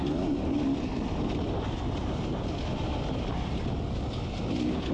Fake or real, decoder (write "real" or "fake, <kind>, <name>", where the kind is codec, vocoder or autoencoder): real